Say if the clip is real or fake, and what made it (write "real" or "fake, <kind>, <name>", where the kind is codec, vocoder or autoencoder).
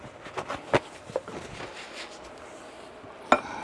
real